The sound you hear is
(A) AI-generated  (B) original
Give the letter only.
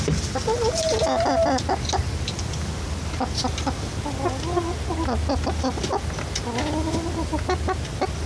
B